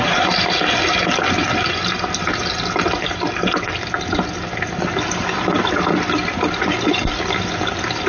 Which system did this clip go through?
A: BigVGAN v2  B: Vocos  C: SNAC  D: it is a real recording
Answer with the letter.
D